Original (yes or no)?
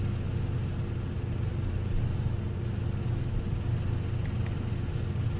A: yes